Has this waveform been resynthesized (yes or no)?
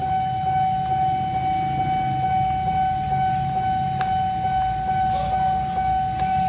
no